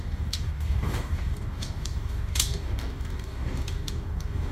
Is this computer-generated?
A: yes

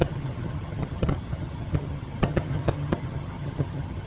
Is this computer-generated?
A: yes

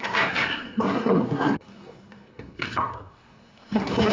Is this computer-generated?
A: yes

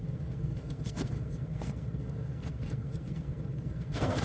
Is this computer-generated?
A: yes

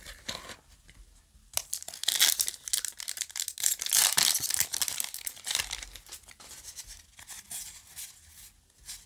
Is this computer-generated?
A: no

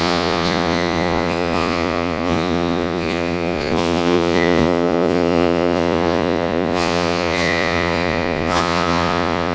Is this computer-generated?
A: yes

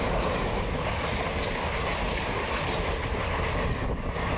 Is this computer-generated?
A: no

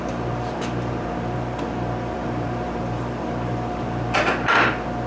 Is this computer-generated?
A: yes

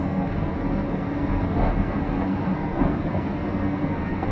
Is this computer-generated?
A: yes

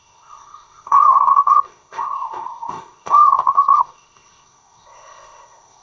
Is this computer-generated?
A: yes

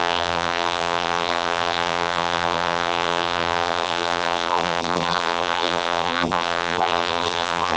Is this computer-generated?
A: yes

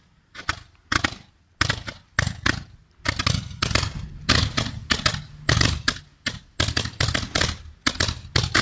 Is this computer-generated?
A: no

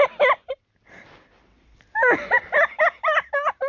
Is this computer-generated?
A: no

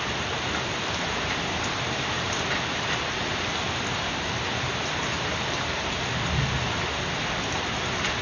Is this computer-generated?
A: yes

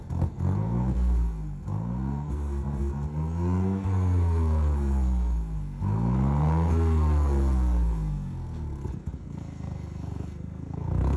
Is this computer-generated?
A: yes